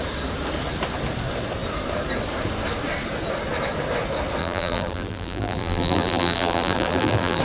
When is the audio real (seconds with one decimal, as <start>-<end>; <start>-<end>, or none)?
0.0-4.4